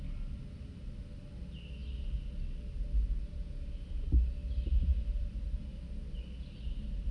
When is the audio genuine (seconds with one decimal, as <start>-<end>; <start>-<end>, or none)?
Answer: 0.0-7.1